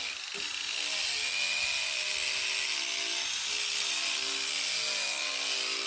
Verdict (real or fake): real